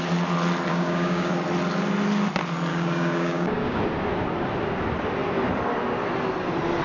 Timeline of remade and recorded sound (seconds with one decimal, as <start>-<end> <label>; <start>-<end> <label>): 0.0-0.7 recorded; 0.7-1.3 remade; 1.3-2.7 recorded; 2.7-3.8 remade; 3.8-6.8 recorded